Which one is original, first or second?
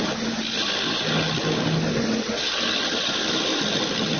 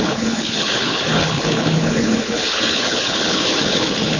first